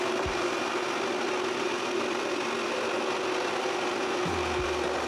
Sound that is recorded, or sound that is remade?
recorded